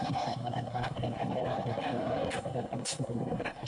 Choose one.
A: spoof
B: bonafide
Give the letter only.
A